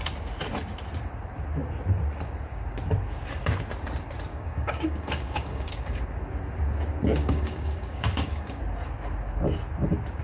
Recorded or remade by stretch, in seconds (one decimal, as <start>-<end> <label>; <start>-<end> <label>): 0.0-4.3 recorded; 4.3-6.0 remade; 6.0-7.2 recorded; 7.2-8.6 remade; 8.6-10.2 recorded